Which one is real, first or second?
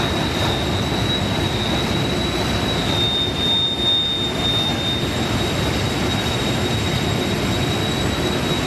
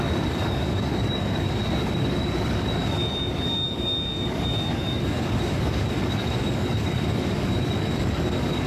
first